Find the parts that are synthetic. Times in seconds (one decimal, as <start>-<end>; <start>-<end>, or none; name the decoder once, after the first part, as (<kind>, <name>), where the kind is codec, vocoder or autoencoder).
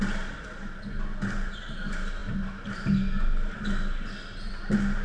none